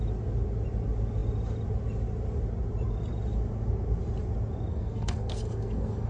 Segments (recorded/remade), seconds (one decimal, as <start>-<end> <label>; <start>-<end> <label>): 0.0-4.7 recorded; 4.7-6.1 remade